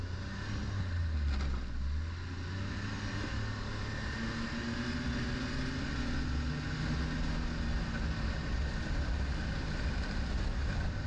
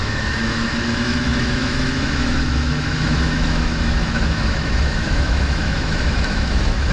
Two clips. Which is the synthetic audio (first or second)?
second